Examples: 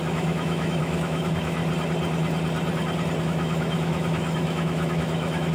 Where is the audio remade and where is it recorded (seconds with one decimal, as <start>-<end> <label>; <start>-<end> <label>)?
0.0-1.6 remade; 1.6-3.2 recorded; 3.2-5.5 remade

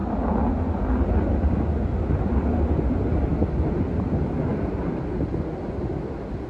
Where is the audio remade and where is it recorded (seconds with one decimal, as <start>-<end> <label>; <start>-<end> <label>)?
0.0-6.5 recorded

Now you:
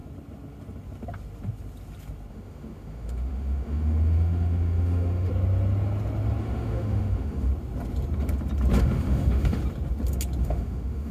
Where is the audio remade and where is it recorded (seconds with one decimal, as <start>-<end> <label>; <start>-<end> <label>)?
0.0-2.3 recorded; 2.3-5.3 remade; 5.3-6.4 recorded; 6.4-7.5 remade; 7.5-8.8 recorded; 8.8-9.6 remade; 9.6-10.4 recorded; 10.4-11.1 remade

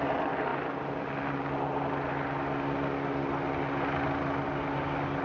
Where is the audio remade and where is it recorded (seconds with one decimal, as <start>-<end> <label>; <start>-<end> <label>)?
0.0-5.2 recorded

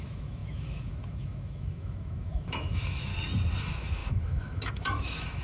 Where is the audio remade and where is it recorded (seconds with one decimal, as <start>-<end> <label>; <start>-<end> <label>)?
0.0-3.1 remade; 3.1-3.6 recorded; 3.6-5.4 remade

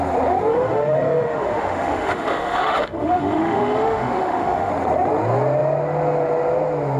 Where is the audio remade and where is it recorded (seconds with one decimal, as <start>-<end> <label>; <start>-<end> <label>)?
0.0-0.5 recorded; 0.5-4.7 remade; 4.7-7.0 recorded

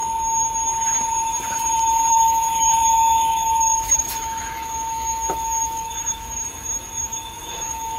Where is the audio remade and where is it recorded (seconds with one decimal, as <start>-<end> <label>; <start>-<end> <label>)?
0.0-2.1 recorded; 2.1-8.0 remade

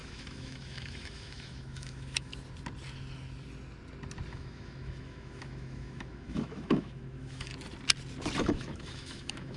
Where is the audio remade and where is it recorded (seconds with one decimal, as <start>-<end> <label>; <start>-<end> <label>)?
0.0-2.3 remade; 2.3-4.3 recorded; 4.3-7.5 remade; 7.5-8.4 recorded; 8.4-9.6 remade